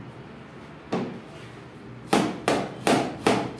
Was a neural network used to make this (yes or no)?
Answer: no